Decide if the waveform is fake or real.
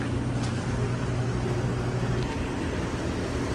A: real